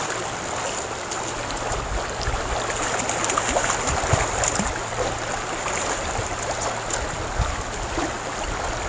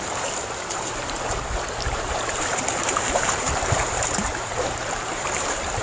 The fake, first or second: second